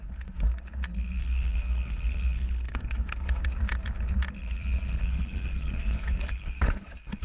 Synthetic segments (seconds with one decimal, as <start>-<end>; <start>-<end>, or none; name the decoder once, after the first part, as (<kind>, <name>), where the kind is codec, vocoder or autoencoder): 0.0-0.5 (codec, SNAC); 1.2-3.4; 5.0-7.2